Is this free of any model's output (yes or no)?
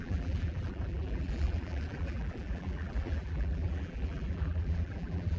no